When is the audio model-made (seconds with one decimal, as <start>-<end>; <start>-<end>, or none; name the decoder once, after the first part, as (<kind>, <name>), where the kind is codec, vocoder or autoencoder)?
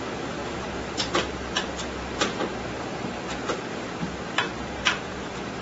none